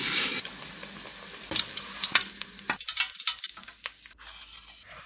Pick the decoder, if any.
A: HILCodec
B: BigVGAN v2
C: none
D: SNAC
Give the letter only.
C